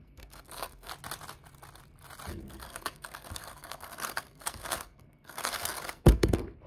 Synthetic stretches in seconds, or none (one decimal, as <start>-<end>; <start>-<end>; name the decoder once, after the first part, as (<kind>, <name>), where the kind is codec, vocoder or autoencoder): 0.0-0.9 (codec, SNAC); 2.3-6.7